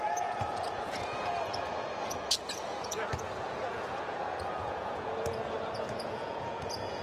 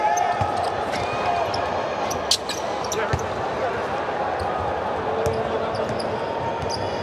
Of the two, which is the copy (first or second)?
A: first